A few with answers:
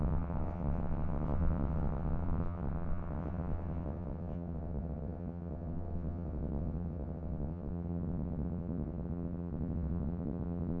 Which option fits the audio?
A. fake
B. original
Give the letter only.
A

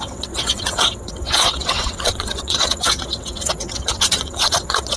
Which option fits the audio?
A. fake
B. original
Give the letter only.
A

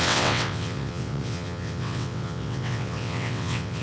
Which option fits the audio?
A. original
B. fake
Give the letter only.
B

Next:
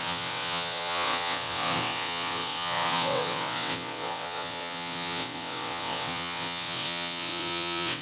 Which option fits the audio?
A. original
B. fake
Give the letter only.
B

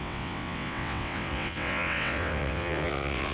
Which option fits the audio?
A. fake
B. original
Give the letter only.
A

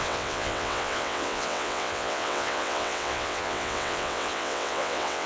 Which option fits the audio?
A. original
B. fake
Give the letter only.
B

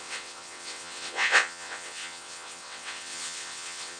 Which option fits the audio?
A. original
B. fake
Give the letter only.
B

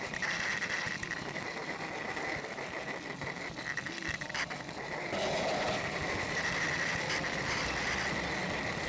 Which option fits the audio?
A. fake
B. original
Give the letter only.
B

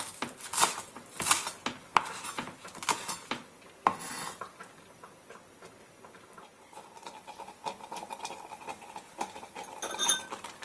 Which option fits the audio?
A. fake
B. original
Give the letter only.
B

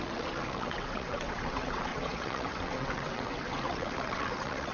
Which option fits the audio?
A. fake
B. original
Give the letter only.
A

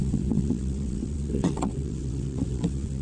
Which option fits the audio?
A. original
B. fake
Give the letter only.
B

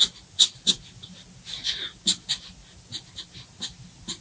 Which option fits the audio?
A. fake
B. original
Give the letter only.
B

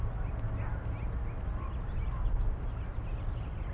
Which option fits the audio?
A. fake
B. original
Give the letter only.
B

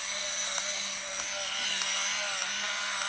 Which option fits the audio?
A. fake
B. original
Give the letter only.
B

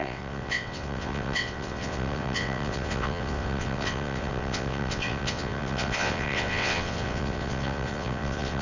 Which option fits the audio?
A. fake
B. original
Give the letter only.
A